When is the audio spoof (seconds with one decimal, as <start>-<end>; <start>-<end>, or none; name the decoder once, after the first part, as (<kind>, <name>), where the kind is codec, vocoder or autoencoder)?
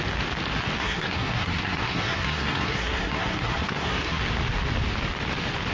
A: 0.8-4.2 (codec, SNAC)